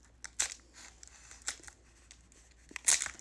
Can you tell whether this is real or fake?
real